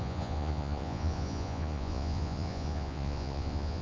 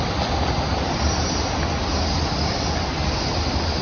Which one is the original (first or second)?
second